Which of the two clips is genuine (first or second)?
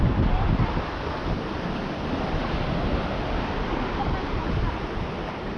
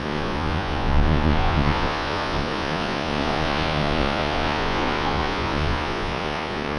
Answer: first